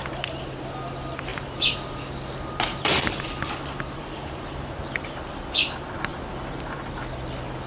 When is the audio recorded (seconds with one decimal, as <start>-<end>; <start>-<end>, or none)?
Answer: 0.0-1.3; 2.1-2.7; 3.3-4.0; 5.2-7.7